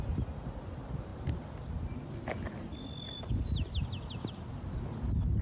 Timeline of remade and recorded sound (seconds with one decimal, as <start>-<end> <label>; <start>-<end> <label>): 0.0-5.4 recorded